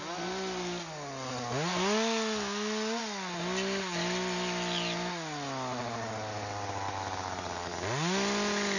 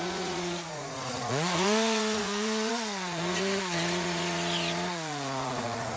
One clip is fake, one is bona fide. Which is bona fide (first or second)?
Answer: first